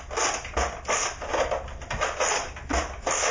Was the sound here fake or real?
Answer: real